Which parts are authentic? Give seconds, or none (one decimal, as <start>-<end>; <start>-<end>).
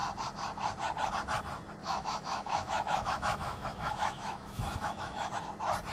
0.0-1.8; 5.3-5.9